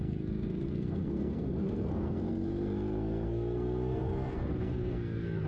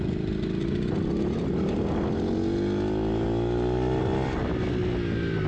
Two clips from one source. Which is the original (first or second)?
second